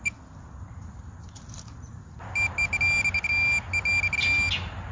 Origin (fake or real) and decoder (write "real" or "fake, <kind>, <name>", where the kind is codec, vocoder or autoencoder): real